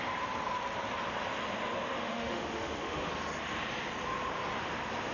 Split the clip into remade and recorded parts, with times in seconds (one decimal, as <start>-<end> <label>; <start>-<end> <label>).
0.0-1.9 recorded; 1.9-3.1 remade; 3.1-5.1 recorded